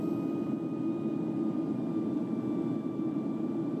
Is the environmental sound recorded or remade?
recorded